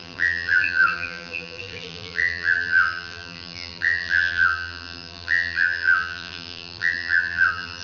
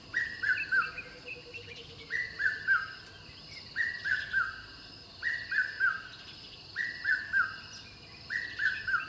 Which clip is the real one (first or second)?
second